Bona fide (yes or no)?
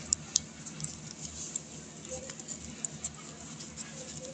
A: yes